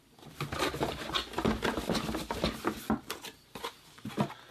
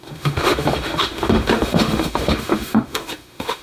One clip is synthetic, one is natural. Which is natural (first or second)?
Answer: first